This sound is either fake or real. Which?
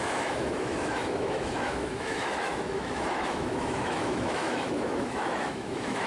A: fake